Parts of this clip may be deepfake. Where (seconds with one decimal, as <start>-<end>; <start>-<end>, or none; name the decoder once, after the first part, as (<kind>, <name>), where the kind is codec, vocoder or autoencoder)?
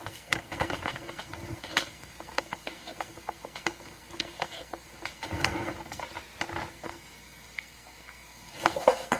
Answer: 0.0-6.0 (codec, SNAC); 6.7-9.2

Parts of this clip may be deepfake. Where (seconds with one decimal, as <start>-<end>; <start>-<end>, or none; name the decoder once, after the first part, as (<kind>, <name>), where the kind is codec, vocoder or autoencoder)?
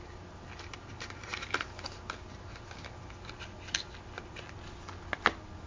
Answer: none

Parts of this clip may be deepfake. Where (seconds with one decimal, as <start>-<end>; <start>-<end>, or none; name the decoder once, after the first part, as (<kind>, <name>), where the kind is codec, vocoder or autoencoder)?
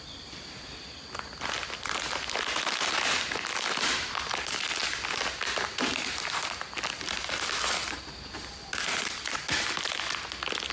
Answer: none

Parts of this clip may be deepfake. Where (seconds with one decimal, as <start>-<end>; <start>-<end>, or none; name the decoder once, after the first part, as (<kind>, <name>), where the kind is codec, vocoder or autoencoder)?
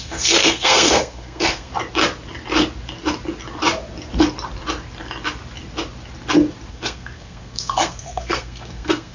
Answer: 0.0-1.7 (codec, SNAC); 6.7-9.1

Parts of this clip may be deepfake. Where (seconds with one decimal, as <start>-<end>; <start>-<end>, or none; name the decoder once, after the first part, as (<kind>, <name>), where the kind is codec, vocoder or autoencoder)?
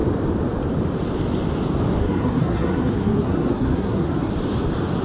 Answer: 2.0-4.3 (codec, SNAC)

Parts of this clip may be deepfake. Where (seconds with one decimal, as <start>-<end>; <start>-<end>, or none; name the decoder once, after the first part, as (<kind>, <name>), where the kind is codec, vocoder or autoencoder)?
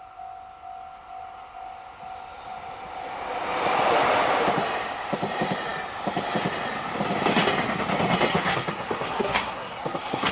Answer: 8.3-10.3 (codec, SNAC)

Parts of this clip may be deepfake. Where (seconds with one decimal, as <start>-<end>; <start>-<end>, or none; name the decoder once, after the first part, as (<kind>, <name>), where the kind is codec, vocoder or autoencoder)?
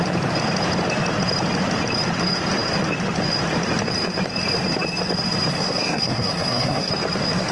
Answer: 5.5-6.9 (codec, SNAC)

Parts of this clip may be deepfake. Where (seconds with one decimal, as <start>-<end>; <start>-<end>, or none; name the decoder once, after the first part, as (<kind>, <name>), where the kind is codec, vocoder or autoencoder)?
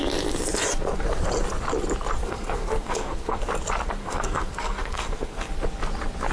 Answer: 2.2-3.5 (codec, SNAC); 4.0-5.5